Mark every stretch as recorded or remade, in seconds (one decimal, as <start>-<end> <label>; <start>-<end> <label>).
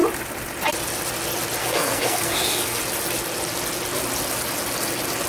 0.0-1.6 recorded; 1.6-2.8 remade; 2.8-5.3 recorded